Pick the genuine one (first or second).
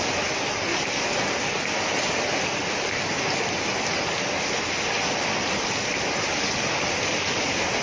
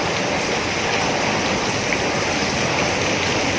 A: first